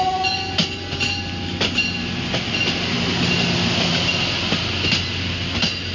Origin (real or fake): real